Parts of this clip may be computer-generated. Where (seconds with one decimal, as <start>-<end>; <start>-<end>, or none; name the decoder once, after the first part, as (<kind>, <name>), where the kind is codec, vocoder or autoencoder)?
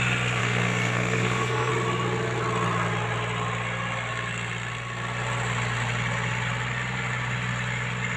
0.4-1.7 (codec, SNAC)